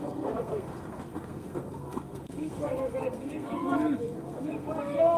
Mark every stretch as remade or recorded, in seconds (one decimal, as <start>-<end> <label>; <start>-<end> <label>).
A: 0.0-5.2 remade